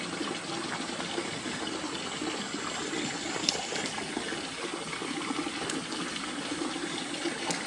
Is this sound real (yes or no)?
yes